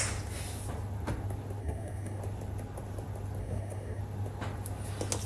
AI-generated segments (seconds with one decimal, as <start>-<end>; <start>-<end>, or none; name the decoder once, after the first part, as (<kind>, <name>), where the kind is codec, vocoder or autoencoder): 1.6-2.2 (codec, SNAC); 3.4-4.0